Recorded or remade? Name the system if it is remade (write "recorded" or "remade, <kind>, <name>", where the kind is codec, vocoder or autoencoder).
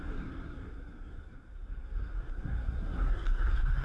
remade, codec, SNAC